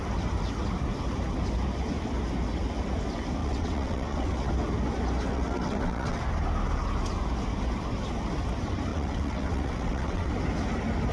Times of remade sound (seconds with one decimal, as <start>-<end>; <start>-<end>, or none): 3.4-4.5; 5.3-6.2; 8.9-10.3